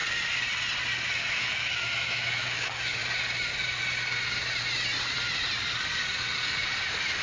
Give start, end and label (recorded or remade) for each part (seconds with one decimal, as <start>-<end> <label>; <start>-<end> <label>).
0.0-1.3 recorded; 1.3-3.0 remade; 3.0-7.2 recorded